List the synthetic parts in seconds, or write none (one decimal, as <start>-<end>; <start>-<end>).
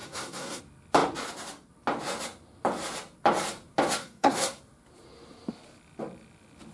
0.0-0.6; 4.0-4.6